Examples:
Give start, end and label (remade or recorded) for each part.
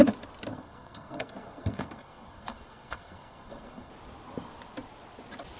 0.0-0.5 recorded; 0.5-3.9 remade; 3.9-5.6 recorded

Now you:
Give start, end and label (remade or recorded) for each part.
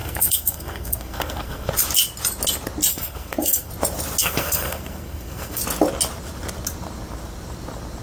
0.0-1.7 remade; 1.7-2.9 recorded; 2.9-3.7 remade; 3.7-4.2 recorded; 4.2-5.6 remade; 5.6-8.0 recorded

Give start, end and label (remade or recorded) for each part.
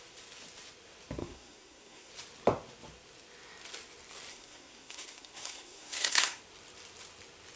0.0-1.2 recorded; 1.2-2.1 remade; 2.1-4.3 recorded; 4.3-6.4 remade; 6.4-7.6 recorded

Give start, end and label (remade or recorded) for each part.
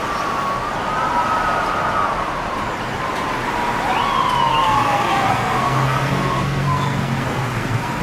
0.0-4.5 recorded; 4.5-8.0 remade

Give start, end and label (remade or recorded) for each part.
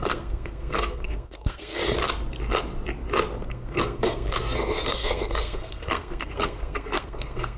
0.0-1.8 remade; 1.8-3.4 recorded; 3.4-7.6 remade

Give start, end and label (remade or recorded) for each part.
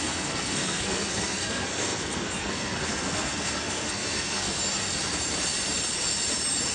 0.0-4.6 remade; 4.6-6.7 recorded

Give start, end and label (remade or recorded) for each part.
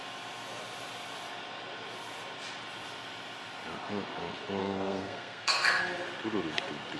0.0-4.6 recorded; 4.6-5.8 remade; 5.8-7.0 recorded